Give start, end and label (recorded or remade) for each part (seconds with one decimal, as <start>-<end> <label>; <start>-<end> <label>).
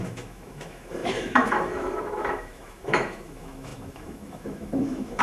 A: 0.0-5.2 remade